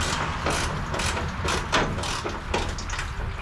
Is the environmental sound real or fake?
real